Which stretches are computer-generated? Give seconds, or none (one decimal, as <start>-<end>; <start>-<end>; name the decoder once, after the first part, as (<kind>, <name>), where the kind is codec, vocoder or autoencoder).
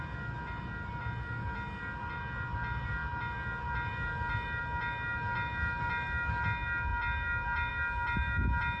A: none